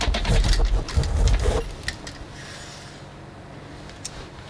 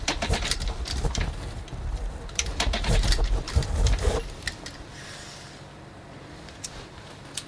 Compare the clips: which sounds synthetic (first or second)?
second